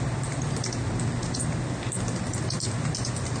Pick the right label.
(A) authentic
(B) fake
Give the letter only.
A